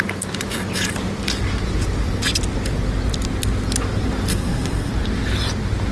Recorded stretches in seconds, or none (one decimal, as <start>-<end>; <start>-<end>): 0.0-4.3; 4.9-5.9